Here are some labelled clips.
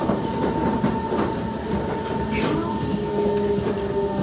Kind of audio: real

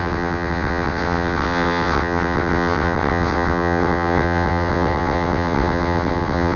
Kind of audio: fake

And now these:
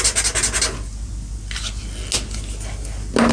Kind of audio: real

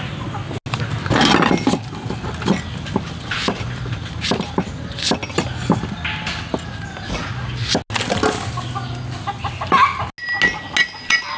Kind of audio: real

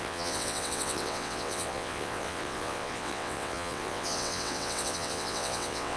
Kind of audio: fake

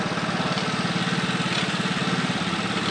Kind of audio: real